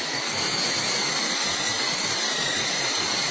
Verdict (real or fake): real